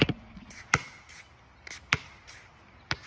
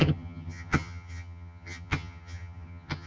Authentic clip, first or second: first